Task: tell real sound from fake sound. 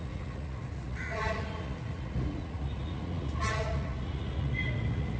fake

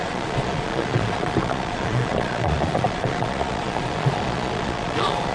fake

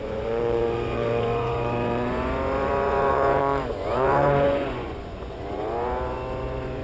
fake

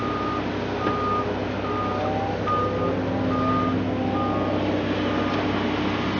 real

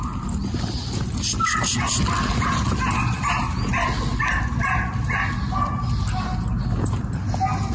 real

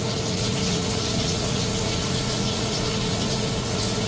fake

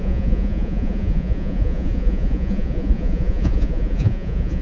fake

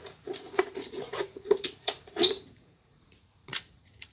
fake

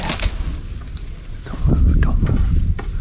real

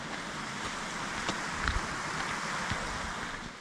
real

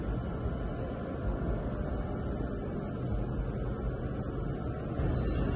real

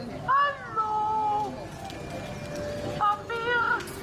real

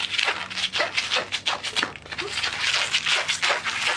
real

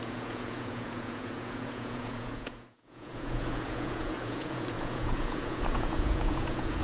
fake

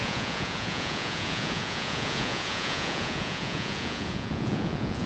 fake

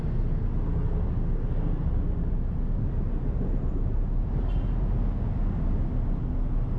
real